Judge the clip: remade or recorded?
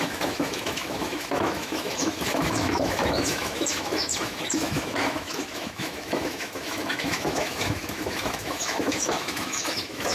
remade